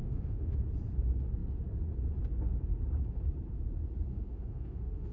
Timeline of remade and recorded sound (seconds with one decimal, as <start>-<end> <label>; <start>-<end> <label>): 0.0-0.6 remade; 0.6-4.1 recorded; 4.1-5.1 remade